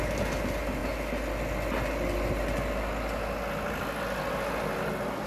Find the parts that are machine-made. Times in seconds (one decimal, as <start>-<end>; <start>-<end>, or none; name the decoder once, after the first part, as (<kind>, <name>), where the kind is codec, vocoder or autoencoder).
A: none